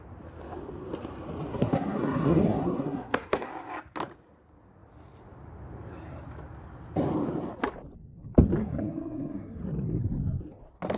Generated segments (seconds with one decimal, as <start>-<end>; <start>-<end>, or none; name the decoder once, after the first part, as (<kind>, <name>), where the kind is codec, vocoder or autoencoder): 1.5-3.5 (codec, SNAC); 8.6-9.6

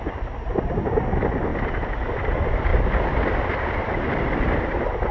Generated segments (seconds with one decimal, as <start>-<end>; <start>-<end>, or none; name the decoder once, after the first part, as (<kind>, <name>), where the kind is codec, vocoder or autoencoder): none

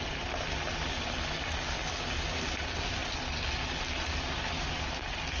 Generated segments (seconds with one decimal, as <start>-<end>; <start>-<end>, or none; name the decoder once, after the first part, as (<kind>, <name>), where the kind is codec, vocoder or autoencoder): none